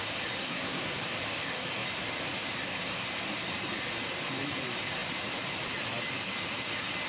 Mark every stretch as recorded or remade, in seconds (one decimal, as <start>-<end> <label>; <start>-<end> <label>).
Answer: 0.0-0.4 recorded; 0.4-1.0 remade; 1.0-7.1 recorded